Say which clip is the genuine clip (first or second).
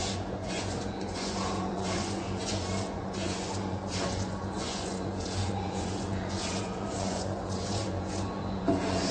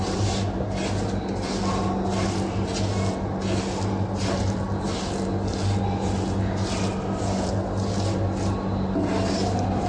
second